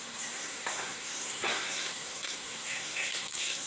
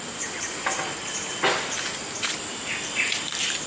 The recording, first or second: second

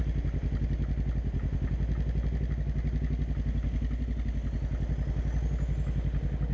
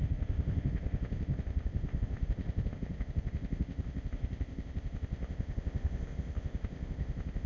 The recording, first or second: first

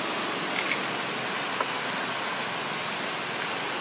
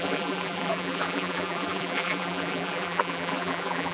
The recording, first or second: first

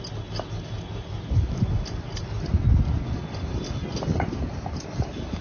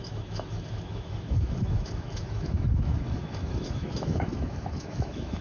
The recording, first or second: first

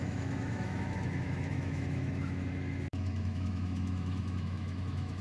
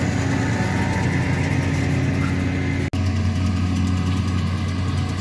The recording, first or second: second